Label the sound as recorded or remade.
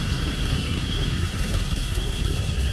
remade